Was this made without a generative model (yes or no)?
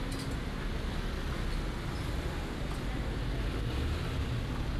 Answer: yes